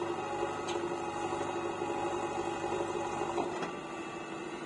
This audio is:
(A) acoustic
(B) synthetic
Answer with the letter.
A